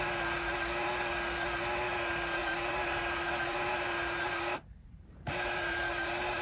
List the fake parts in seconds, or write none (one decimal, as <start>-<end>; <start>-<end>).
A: 2.4-6.4